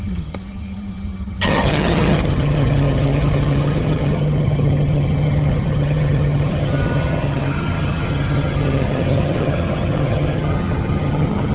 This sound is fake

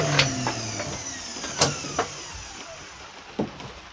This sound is real